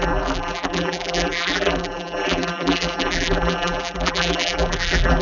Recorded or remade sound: remade